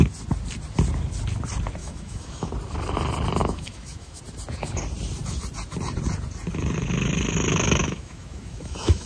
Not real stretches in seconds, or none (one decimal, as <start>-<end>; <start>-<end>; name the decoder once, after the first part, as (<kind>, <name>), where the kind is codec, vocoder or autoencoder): 1.8-2.5 (autoencoder, DAC-VAE); 3.4-4.2; 7.8-9.1